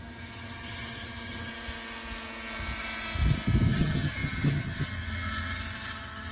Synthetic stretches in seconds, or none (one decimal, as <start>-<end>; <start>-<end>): 0.0-1.5; 3.7-6.3